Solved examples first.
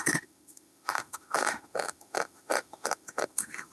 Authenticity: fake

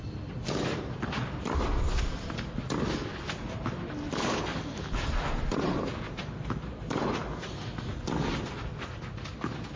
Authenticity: real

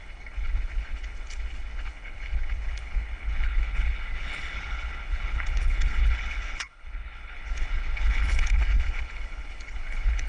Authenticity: fake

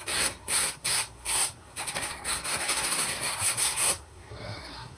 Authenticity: fake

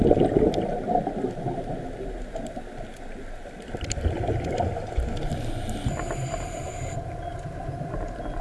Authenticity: real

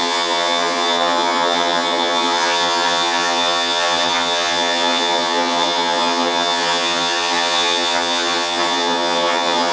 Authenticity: fake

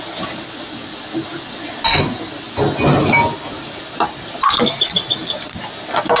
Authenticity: real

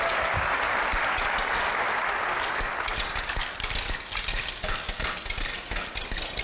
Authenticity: real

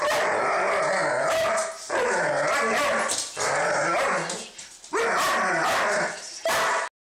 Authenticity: real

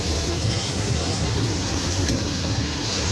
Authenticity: fake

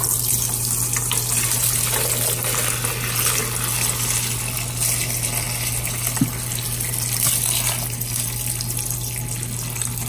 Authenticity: real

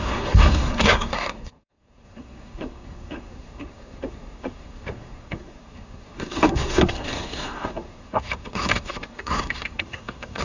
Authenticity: fake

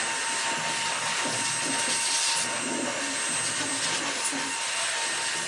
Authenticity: real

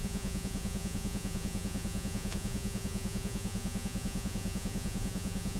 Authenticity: fake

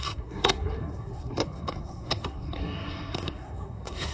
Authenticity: fake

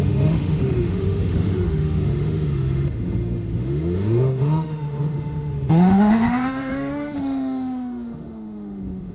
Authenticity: fake